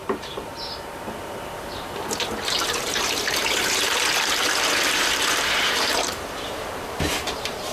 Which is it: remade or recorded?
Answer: remade